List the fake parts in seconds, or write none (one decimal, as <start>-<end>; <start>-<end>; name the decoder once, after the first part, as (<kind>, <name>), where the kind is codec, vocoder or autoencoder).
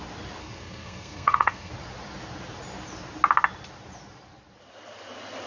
0.4-1.7 (codec, SNAC)